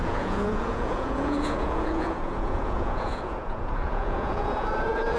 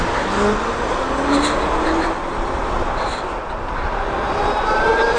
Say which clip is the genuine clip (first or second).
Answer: second